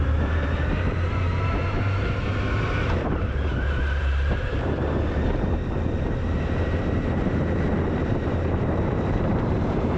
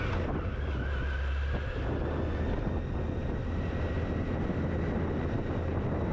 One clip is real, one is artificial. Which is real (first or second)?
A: second